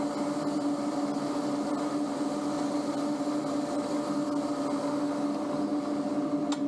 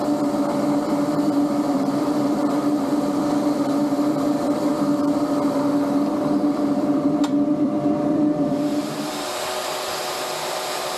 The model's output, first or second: second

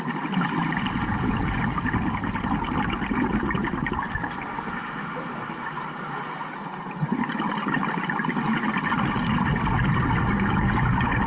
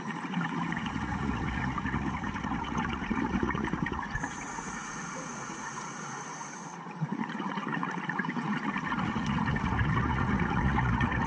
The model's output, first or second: second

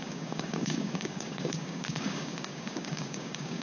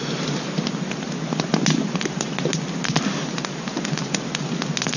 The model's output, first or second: first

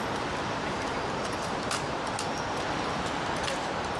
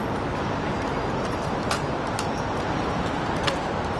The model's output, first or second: first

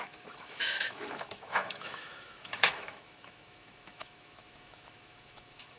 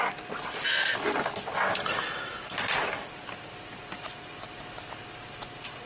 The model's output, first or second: first